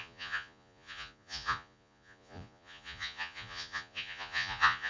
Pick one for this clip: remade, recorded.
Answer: remade